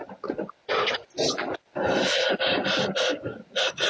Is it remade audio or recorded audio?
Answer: recorded